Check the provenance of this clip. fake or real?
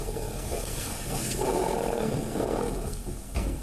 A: fake